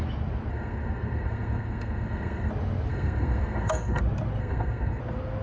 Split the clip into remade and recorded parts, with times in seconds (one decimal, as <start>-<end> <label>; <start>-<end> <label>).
0.0-0.5 recorded; 0.5-2.5 remade; 2.5-2.9 recorded; 2.9-4.0 remade; 4.0-4.4 recorded; 4.4-5.0 remade; 5.0-5.4 recorded